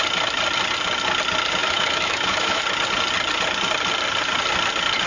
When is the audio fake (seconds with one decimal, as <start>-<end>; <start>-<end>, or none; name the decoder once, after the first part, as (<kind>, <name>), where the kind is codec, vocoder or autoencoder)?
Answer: 1.6-2.6 (autoencoder, DAC-VAE)